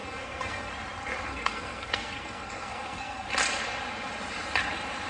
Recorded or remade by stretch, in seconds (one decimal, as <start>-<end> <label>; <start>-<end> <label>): 0.0-0.7 remade; 0.7-1.3 recorded; 1.3-3.3 remade; 3.3-5.1 recorded